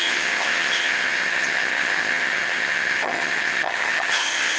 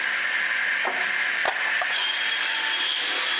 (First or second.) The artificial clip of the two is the first